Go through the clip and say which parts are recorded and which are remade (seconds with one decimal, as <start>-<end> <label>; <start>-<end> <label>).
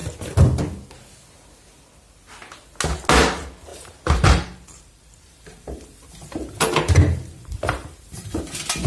0.0-3.7 recorded; 3.7-8.4 remade; 8.4-8.9 recorded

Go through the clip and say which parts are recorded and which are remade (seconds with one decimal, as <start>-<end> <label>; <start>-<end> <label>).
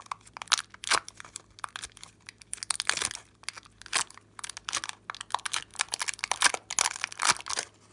0.0-5.7 recorded; 5.7-6.5 remade; 6.5-7.9 recorded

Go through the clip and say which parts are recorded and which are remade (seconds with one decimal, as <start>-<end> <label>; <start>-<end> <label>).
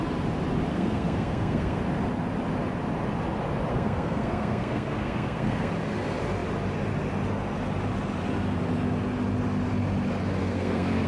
0.0-0.7 recorded; 0.7-1.8 remade; 1.8-3.7 recorded; 3.7-5.7 remade; 5.7-10.4 recorded; 10.4-11.1 remade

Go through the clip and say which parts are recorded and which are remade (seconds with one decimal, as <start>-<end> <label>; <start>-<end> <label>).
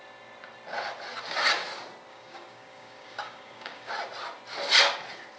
0.0-2.1 recorded; 2.1-3.9 remade; 3.9-5.4 recorded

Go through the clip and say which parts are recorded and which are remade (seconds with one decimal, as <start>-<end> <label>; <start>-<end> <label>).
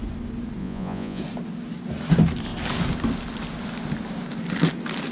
0.0-0.6 recorded; 0.6-1.2 remade; 1.2-5.1 recorded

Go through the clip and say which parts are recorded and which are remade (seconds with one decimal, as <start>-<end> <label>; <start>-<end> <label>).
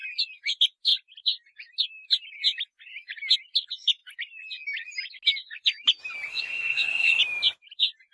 0.0-6.3 recorded; 6.3-7.2 remade; 7.2-8.1 recorded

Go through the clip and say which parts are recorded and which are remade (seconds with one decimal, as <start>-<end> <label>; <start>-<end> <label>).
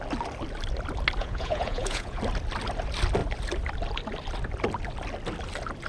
0.0-1.2 recorded; 1.2-2.2 remade; 2.2-5.9 recorded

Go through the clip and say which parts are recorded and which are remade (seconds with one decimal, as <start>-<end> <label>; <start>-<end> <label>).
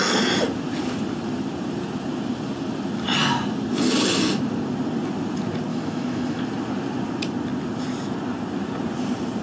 0.0-5.7 recorded; 5.7-6.4 remade; 6.4-9.4 recorded